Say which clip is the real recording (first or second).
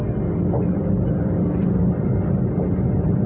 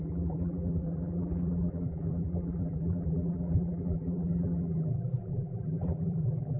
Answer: first